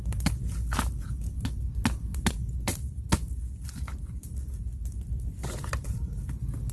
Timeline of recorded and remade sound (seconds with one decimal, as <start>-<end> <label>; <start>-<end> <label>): 0.0-2.7 recorded; 2.7-4.7 remade; 4.7-5.4 recorded; 5.4-6.3 remade; 6.3-6.7 recorded